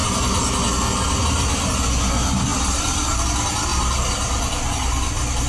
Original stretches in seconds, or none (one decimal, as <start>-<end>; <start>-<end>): 0.0-2.5; 3.2-3.7; 4.4-5.5